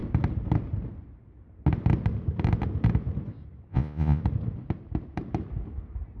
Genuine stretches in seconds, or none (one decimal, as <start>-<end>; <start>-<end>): 0.0-3.7; 4.2-6.2